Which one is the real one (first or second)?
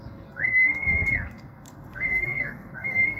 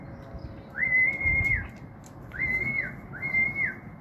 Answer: second